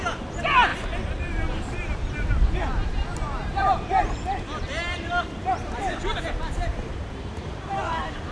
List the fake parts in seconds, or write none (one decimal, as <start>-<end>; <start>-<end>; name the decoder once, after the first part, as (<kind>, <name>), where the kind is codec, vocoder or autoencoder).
0.7-2.5 (vocoder, BigVGAN v2); 3.1-7.8